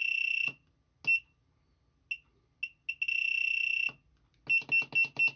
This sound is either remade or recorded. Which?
recorded